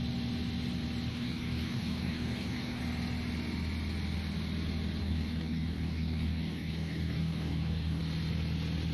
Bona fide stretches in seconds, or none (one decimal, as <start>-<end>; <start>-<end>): 0.0-1.1; 2.8-5.0; 8.0-8.9